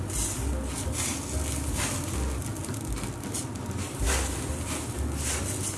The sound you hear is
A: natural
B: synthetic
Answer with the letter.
A